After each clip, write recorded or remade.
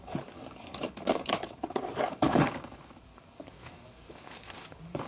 remade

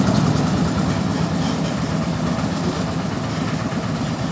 recorded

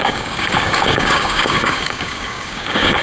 remade